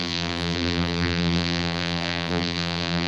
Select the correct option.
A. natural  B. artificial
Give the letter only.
B